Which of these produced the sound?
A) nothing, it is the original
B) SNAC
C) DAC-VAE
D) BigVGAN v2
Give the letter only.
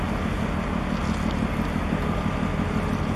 A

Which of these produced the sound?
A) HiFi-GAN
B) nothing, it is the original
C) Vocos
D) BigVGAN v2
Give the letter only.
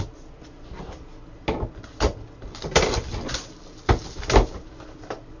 B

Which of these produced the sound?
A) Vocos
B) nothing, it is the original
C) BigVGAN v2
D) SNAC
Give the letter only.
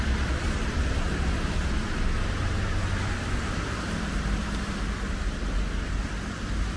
C